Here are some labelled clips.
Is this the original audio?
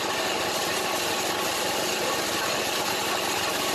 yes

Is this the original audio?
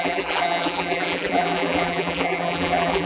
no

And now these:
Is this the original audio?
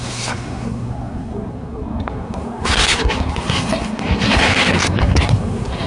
no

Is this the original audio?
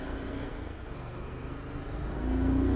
no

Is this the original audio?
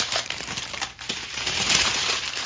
no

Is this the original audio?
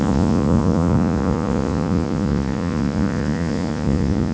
no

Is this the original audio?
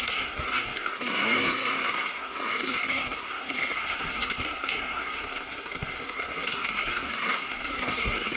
no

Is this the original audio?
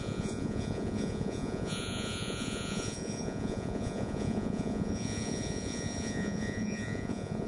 no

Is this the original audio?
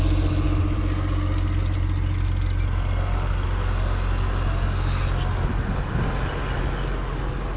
yes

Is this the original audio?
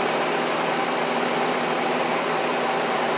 no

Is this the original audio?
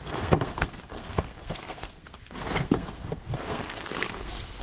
no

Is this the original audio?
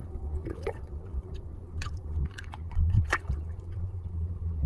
no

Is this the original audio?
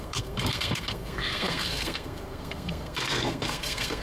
no